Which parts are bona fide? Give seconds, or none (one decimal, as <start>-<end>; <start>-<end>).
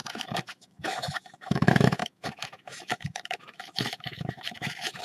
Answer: none